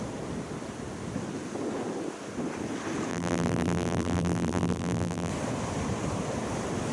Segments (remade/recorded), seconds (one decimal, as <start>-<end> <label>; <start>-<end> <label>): 0.0-3.1 recorded; 3.1-5.3 remade; 5.3-6.9 recorded